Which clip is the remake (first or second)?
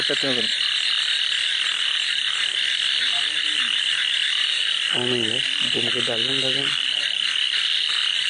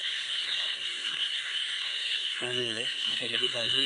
second